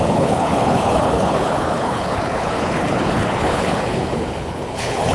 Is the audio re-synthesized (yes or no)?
yes